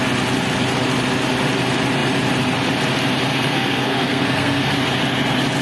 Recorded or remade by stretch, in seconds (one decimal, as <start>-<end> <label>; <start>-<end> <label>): 0.0-3.3 recorded; 3.3-4.7 remade; 4.7-5.6 recorded